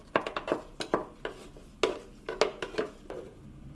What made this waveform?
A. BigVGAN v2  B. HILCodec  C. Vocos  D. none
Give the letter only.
D